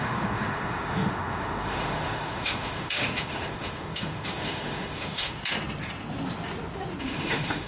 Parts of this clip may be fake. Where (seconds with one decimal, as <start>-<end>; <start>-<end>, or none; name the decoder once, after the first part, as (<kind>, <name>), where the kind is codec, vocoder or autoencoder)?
0.0-5.4 (autoencoder, DAC-VAE); 7.0-7.7